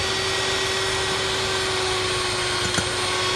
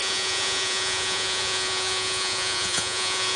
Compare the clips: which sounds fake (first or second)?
second